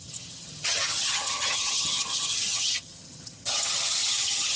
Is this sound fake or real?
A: fake